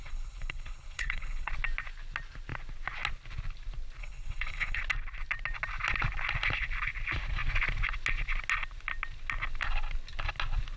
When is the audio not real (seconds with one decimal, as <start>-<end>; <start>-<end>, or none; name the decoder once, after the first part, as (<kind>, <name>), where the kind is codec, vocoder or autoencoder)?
0.0-1.5 (codec, HILCodec); 4.0-4.8